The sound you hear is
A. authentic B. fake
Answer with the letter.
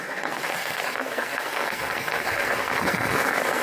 B